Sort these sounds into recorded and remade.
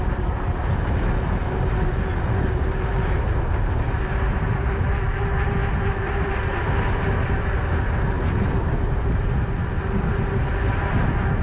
recorded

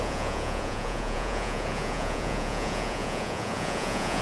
remade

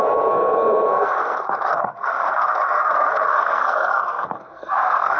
remade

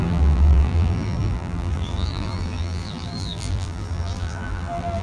remade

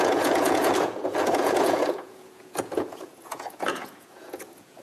remade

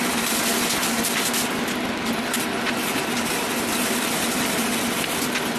recorded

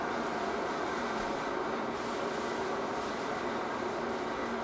recorded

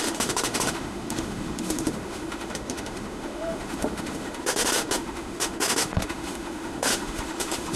remade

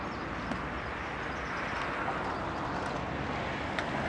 recorded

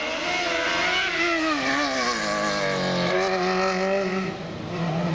recorded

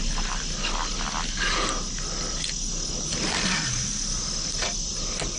recorded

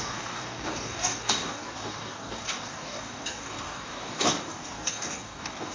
remade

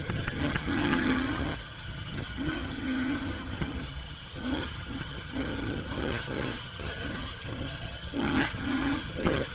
remade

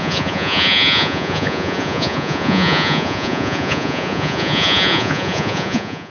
remade